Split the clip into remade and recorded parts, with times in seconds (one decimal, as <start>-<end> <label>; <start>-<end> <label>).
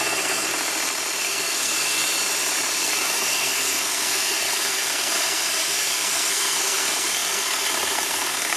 0.0-0.5 remade; 0.5-1.2 recorded; 1.2-2.0 remade; 2.0-2.8 recorded; 2.8-8.6 remade